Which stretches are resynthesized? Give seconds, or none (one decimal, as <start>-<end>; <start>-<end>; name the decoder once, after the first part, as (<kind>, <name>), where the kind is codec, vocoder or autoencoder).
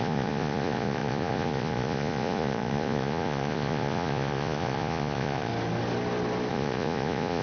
0.0-5.5 (vocoder, Vocos); 6.5-7.4